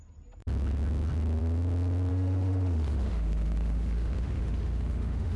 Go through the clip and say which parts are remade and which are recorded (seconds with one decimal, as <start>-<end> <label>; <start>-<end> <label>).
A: 0.0-2.1 recorded; 2.1-5.4 remade